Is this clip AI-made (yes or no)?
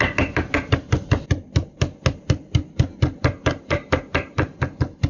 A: no